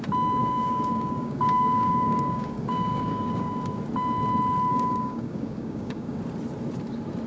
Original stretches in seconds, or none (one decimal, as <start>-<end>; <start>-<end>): 0.0-0.4; 3.5-4.7; 6.2-7.3